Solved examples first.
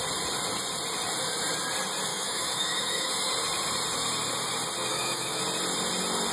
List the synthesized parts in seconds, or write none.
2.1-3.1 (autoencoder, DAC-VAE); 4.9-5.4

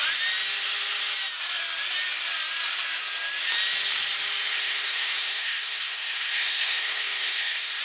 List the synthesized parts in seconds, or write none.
4.5-7.8 (codec, SNAC)